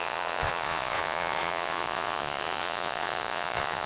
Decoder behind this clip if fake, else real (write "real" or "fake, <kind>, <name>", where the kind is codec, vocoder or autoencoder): fake, vocoder, Vocos